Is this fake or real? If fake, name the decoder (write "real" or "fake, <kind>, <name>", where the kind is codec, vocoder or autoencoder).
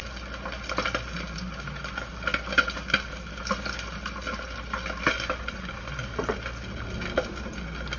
real